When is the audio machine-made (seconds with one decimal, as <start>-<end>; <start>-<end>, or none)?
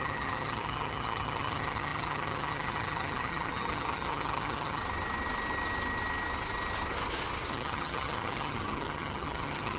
0.0-4.8; 7.5-9.8